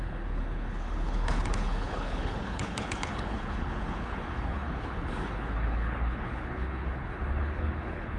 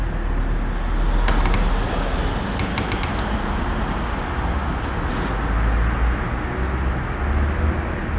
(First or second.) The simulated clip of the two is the first